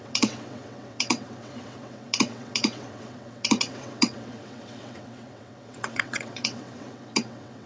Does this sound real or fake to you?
fake